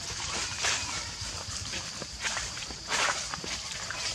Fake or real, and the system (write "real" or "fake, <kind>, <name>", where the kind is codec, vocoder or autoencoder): fake, vocoder, BigVGAN v2